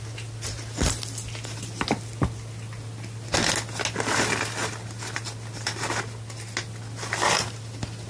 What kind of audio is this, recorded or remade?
recorded